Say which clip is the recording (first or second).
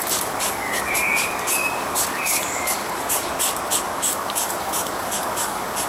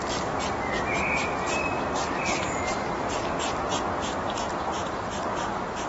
second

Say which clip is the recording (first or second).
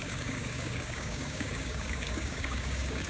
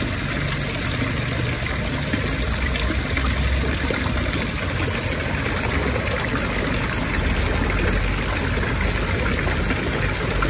second